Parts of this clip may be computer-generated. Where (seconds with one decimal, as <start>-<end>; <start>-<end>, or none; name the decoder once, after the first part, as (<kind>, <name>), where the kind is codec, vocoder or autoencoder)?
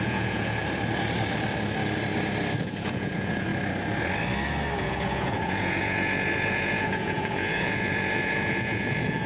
0.0-0.6 (vocoder, Vocos); 2.6-3.5; 4.8-9.3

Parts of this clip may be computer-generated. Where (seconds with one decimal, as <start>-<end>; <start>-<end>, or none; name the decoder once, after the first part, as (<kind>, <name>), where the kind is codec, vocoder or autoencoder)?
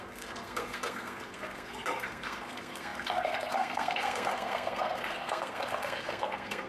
0.0-6.7 (codec, SNAC)